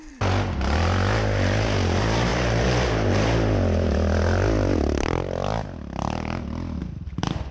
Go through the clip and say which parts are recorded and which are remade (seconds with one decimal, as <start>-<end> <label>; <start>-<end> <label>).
0.0-7.5 recorded